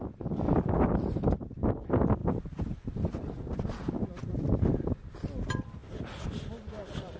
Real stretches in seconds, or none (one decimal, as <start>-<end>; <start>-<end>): 0.0-7.2